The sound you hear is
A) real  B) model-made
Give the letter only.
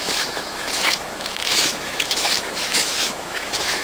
B